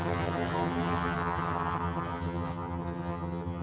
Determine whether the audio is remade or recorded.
remade